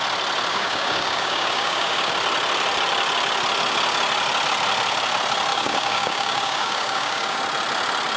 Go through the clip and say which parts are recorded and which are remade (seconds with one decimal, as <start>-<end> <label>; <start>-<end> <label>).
0.0-0.5 recorded; 0.5-2.1 remade; 2.1-5.5 recorded; 5.5-7.4 remade; 7.4-8.2 recorded

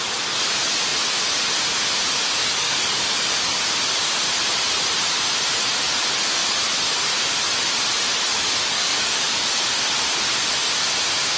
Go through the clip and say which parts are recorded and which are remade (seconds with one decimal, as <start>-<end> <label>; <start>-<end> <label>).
0.0-2.4 recorded; 2.4-3.6 remade; 3.6-8.3 recorded; 8.3-9.6 remade; 9.6-11.4 recorded